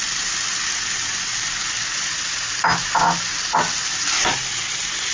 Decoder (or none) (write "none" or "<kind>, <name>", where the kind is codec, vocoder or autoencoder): none